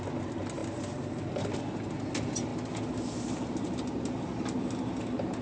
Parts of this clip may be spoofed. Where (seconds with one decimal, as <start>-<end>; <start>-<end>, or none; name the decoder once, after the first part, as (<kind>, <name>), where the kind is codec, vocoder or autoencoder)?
none